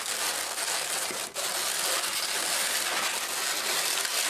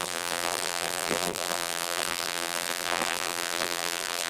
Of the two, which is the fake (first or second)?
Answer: second